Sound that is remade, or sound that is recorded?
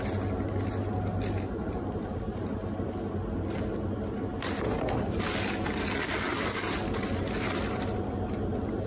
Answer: recorded